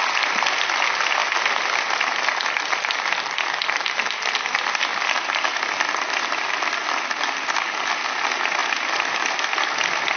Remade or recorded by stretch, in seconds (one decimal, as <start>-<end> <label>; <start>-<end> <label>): 0.0-8.6 recorded; 8.6-9.1 remade; 9.1-10.2 recorded